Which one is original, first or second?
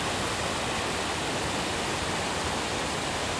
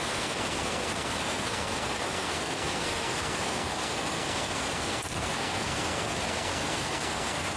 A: first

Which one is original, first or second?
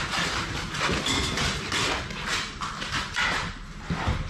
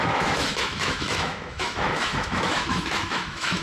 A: first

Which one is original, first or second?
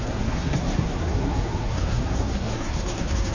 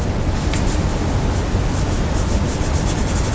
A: second